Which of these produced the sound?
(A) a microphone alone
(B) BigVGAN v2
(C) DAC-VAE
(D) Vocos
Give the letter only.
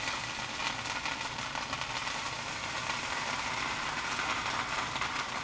A